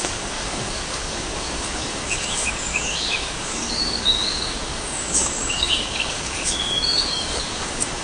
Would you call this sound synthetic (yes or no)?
yes